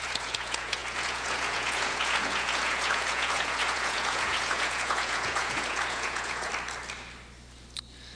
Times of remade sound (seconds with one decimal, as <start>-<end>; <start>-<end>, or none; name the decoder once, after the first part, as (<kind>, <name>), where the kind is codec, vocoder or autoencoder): 0.0-6.5 (vocoder, Vocos)